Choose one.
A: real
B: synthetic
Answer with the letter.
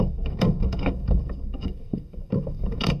B